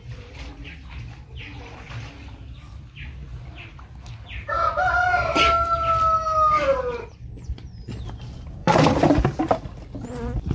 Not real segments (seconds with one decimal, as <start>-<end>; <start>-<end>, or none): 8.6-9.4